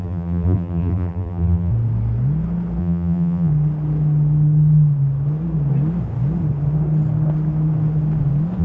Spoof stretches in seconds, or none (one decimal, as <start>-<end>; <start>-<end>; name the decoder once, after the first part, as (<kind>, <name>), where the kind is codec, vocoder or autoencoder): 0.0-1.7 (vocoder, BigVGAN v2); 2.8-3.5